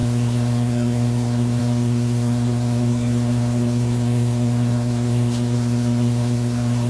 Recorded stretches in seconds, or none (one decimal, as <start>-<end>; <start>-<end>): none